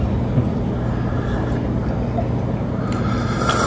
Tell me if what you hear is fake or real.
real